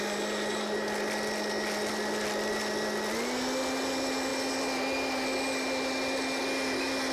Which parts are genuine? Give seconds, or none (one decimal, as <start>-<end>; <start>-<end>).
0.0-7.1